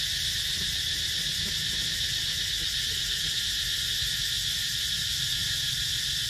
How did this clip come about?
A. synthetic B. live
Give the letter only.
B